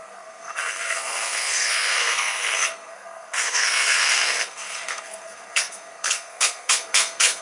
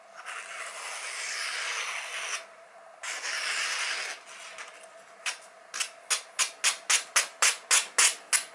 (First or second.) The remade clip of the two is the first